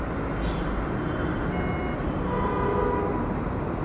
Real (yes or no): yes